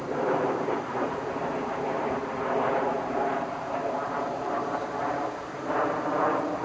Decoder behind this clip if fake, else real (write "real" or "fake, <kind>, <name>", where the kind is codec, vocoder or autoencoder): fake, vocoder, BigVGAN v2